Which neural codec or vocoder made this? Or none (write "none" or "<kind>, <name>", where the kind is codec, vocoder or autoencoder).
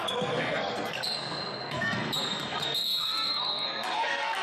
codec, SNAC